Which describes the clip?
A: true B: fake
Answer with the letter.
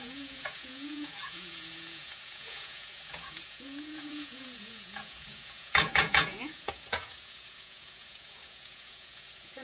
B